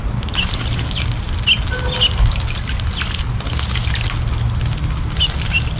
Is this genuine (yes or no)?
yes